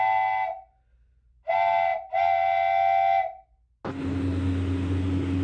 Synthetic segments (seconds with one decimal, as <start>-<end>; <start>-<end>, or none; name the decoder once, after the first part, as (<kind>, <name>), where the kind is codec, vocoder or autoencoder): none